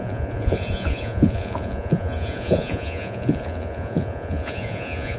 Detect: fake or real fake